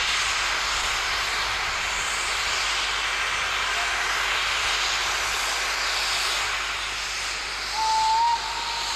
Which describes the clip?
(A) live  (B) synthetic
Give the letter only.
A